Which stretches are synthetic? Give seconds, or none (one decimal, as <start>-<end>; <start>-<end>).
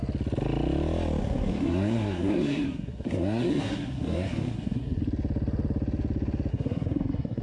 1.2-5.0; 6.5-7.4